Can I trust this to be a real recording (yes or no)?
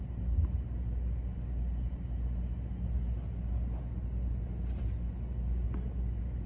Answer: yes